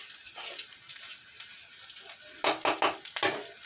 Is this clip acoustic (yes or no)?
yes